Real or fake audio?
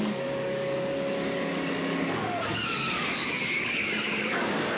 fake